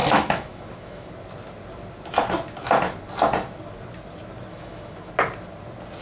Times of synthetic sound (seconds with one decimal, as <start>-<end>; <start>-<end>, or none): 0.0-1.1; 4.5-5.1